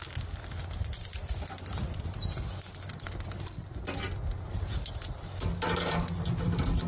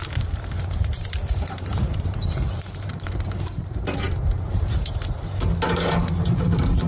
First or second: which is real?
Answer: first